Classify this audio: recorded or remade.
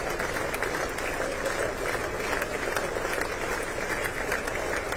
recorded